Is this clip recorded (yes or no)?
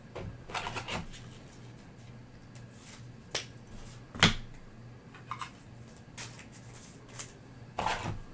yes